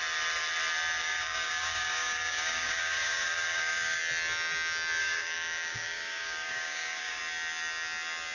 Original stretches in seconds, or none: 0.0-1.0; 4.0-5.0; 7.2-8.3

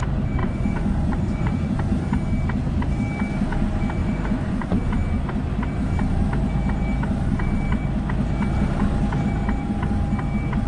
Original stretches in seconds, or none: 0.0-0.4; 1.7-4.0; 4.8-10.7